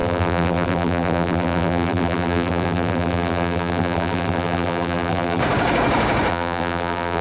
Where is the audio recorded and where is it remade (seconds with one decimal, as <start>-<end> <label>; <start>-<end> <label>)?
0.0-5.4 remade; 5.4-6.3 recorded; 6.3-7.2 remade